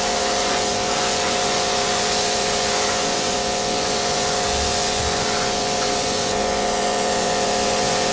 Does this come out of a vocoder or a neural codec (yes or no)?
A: yes